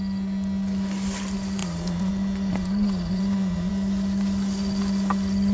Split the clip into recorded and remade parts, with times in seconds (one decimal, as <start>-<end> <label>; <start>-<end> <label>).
0.0-1.6 recorded; 1.6-2.1 remade; 2.1-2.5 recorded; 2.5-3.7 remade; 3.7-5.5 recorded